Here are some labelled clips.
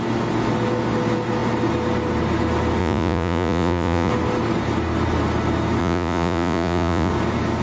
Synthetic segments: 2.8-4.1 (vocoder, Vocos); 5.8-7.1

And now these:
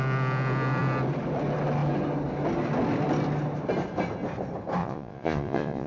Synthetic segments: 4.8-5.9 (vocoder, Vocos)

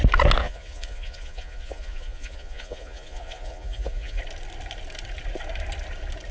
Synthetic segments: 0.4-4.2 (vocoder, Vocos)

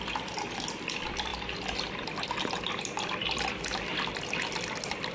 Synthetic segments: none

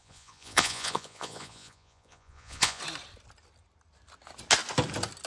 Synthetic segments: 0.0-2.8 (vocoder, Vocos)

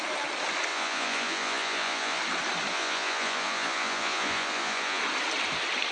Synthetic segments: 0.7-2.2 (vocoder, Vocos); 2.7-5.0

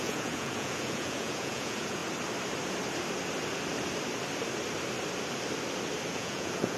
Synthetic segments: 0.0-2.0 (vocoder, Vocos); 6.1-6.8

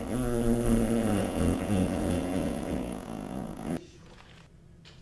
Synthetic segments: 1.2-4.2 (vocoder, Vocos)